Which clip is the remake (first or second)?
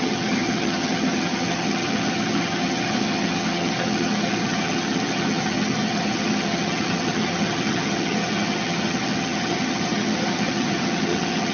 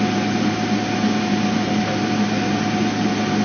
first